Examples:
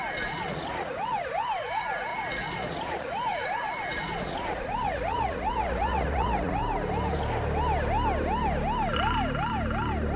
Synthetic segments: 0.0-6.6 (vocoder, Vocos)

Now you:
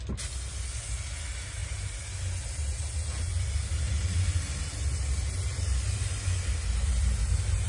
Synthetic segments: none

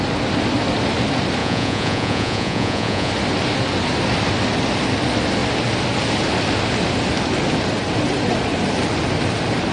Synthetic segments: 1.4-3.1 (vocoder, Vocos)

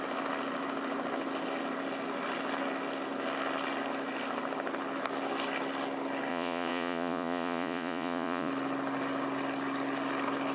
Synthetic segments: 6.3-8.5 (vocoder, Vocos)

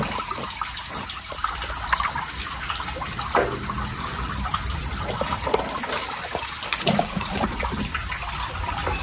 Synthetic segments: 6.7-7.7 (vocoder, Vocos)

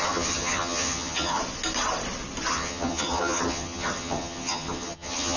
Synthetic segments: 0.0-1.4 (vocoder, HiFi-GAN); 2.5-5.4

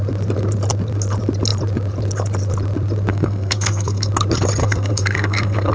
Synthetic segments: 3.1-4.1 (codec, SNAC); 4.6-5.7

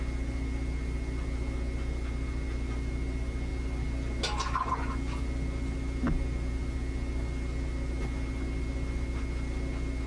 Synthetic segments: none